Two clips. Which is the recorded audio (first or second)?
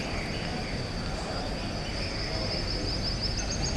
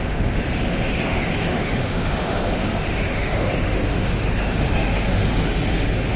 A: first